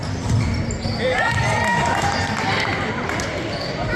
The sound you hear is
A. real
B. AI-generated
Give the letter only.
A